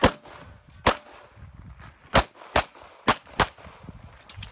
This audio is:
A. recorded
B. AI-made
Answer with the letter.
A